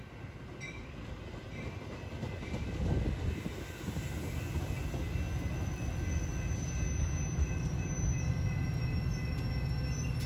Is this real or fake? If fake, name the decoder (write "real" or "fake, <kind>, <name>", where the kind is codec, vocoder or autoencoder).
real